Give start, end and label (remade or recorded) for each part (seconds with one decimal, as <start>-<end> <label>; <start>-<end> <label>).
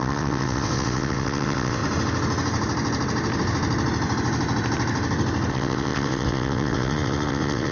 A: 0.0-1.8 remade; 1.8-5.5 recorded; 5.5-7.7 remade